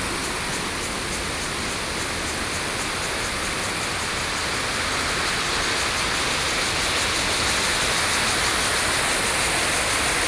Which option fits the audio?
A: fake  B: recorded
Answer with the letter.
B